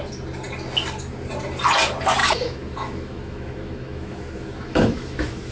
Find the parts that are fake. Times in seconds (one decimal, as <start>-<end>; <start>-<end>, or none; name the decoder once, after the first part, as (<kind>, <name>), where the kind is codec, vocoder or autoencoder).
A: 2.2-5.5 (autoencoder, DAC-VAE)

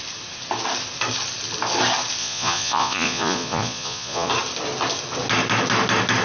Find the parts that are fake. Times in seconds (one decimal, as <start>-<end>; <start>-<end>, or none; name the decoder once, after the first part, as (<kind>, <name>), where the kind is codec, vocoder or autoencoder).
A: 2.2-4.3 (vocoder, Vocos)

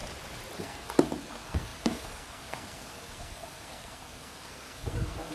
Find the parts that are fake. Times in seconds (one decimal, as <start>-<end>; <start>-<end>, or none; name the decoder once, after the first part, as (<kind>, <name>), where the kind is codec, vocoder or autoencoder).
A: 0.6-5.3 (codec, SNAC)

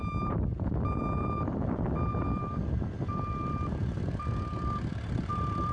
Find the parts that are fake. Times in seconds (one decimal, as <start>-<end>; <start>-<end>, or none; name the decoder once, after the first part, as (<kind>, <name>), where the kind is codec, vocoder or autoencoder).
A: 0.0-5.7 (vocoder, BigVGAN v2)

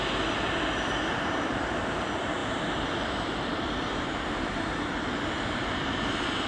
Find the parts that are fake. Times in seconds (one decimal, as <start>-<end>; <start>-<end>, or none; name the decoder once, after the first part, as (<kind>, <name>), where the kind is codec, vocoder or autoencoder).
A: 0.0-6.5 (vocoder, BigVGAN v2)

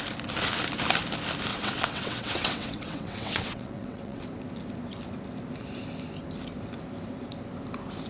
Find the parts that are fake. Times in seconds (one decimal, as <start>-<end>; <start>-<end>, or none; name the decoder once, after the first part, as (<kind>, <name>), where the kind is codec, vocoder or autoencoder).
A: 1.5-4.2 (vocoder, WaveNeXt)